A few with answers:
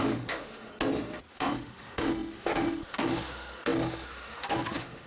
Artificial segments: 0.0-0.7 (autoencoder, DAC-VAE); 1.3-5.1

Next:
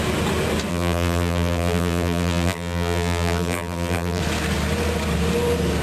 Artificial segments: 0.7-4.2 (vocoder, BigVGAN v2)

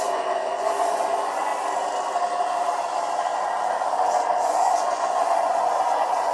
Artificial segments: 0.0-1.5 (vocoder, Vocos); 4.4-6.3

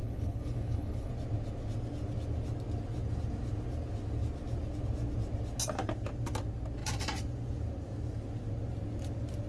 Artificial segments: 0.0-1.1 (codec, HILCodec)

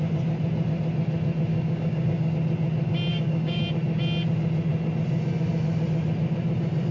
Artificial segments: 1.5-2.3 (codec, DAC); 3.1-3.6